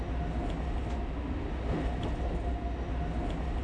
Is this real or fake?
real